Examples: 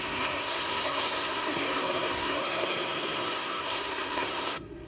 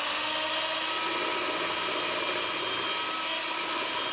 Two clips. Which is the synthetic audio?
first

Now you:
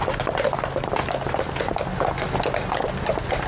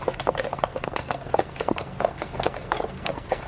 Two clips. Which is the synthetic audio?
second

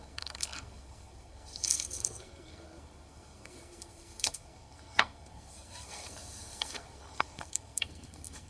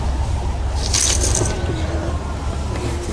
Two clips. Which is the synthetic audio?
first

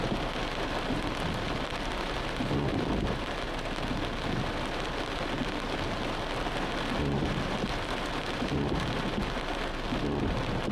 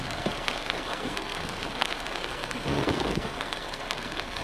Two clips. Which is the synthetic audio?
second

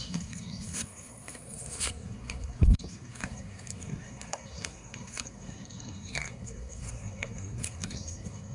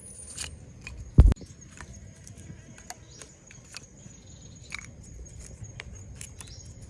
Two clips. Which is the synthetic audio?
first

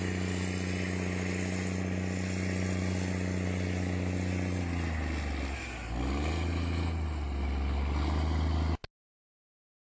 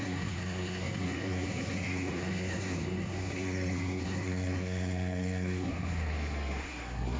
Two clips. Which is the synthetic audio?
second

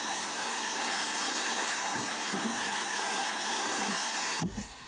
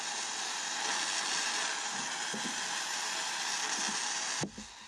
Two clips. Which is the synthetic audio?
first